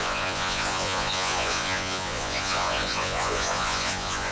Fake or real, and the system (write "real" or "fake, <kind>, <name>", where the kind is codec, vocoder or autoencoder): fake, vocoder, Vocos